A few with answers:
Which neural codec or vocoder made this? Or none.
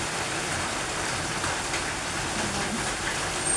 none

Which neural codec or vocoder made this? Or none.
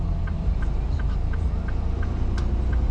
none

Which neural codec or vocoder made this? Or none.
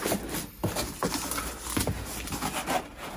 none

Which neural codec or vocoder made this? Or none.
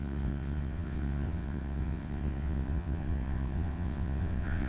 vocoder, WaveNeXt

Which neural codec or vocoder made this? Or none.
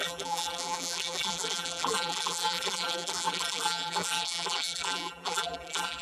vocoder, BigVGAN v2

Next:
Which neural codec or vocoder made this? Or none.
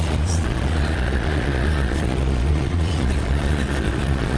vocoder, Vocos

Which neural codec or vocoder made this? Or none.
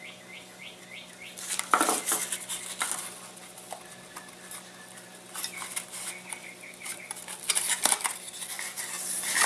none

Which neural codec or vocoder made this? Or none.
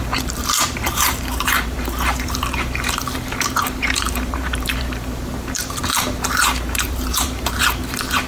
vocoder, BigVGAN v2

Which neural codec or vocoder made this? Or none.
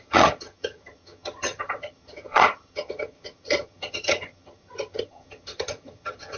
vocoder, HiFi-GAN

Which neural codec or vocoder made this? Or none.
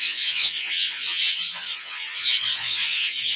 vocoder, Vocos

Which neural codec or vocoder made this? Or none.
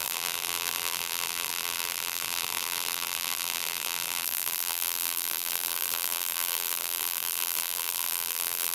vocoder, BigVGAN v2